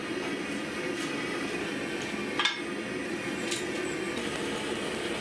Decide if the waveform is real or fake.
real